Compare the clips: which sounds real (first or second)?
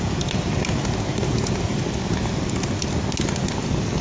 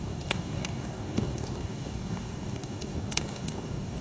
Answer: first